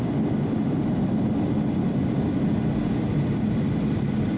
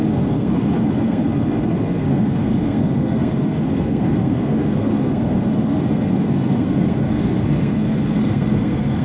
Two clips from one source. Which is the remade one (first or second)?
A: second